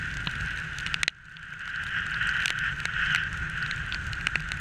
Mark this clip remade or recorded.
recorded